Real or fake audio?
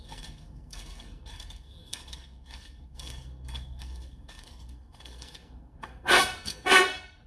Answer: fake